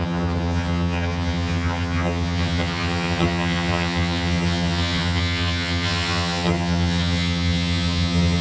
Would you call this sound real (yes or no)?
no